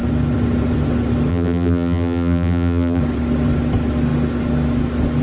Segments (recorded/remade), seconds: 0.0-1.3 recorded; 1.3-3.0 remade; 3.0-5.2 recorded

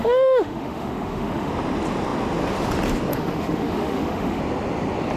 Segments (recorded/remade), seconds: 0.0-1.5 remade; 1.5-3.1 recorded; 3.1-4.4 remade; 4.4-5.2 recorded

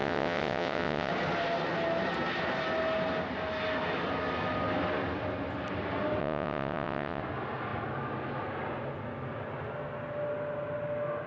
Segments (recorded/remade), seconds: 0.0-1.1 remade; 1.1-6.2 recorded; 6.2-7.2 remade; 7.2-11.3 recorded

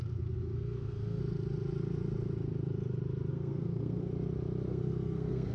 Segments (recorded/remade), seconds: 0.0-1.2 remade; 1.2-3.3 recorded; 3.3-4.1 remade; 4.1-4.7 recorded; 4.7-5.5 remade

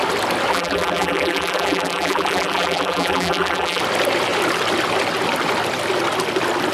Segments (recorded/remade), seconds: 0.0-0.5 recorded; 0.5-3.8 remade; 3.8-6.7 recorded

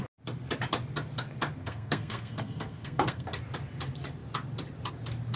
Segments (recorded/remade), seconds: 0.0-1.6 recorded; 1.6-3.4 remade; 3.4-5.4 recorded

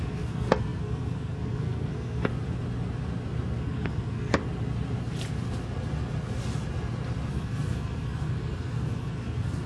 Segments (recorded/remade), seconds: 0.0-2.3 remade; 2.3-3.6 recorded; 3.6-4.3 remade; 4.3-7.3 recorded; 7.3-9.7 remade